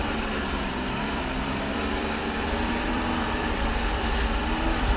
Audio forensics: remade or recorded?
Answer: remade